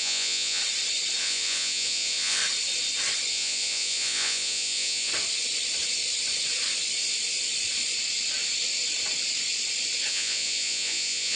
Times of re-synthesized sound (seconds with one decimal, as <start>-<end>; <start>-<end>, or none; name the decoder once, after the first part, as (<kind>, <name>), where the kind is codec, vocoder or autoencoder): 0.0-0.6 (vocoder, Vocos); 1.2-2.4; 3.3-5.1; 10.1-11.4